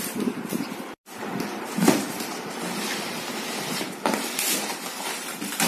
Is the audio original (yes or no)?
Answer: no